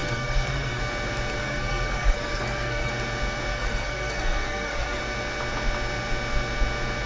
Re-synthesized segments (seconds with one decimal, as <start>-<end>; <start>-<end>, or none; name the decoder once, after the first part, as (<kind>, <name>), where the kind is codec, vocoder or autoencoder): 0.0-0.8 (codec, SNAC); 1.4-2.9; 3.5-5.0